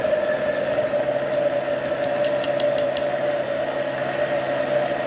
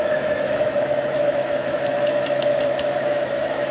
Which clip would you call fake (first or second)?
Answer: second